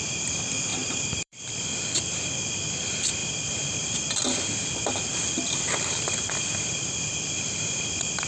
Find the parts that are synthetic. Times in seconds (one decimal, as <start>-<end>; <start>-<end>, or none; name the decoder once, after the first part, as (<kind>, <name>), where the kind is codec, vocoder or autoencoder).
0.7-2.2 (vocoder, BigVGAN v2); 3.2-8.3